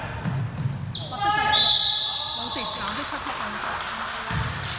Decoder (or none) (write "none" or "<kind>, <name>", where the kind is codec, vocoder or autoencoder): none